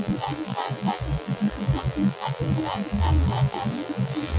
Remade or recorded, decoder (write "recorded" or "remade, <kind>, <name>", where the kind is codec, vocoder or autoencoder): remade, vocoder, BigVGAN v2